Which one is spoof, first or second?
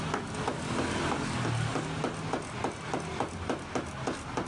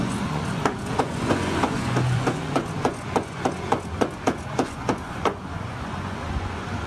second